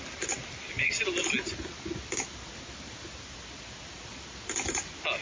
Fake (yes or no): no